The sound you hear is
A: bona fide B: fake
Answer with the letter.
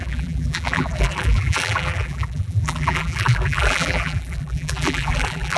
B